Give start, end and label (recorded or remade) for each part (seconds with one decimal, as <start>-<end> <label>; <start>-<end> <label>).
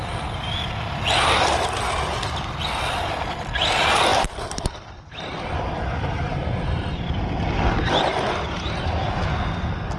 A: 0.0-10.0 recorded